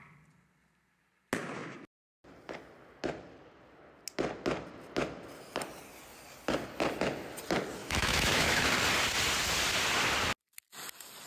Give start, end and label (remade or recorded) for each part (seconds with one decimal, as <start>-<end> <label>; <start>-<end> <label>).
0.0-7.8 recorded; 7.8-8.7 remade; 8.7-11.3 recorded